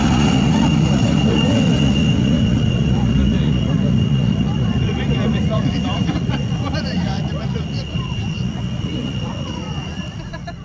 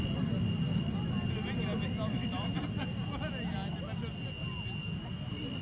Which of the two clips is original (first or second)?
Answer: second